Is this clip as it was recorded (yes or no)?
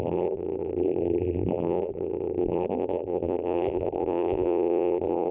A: no